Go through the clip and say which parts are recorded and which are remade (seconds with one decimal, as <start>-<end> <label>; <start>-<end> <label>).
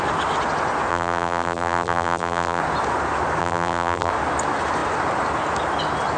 0.0-0.9 recorded; 0.9-2.6 remade; 2.6-3.4 recorded; 3.4-4.1 remade; 4.1-6.2 recorded